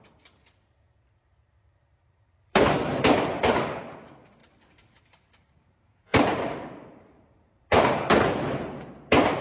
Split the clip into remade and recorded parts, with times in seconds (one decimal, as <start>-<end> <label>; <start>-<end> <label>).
0.0-2.0 recorded; 2.0-3.6 remade; 3.6-4.4 recorded; 4.4-8.1 remade; 8.1-9.4 recorded